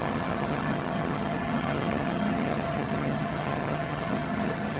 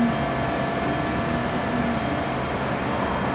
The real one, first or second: second